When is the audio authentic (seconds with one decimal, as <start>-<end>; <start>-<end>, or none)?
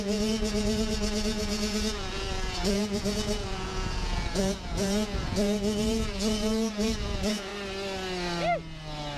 7.5-9.2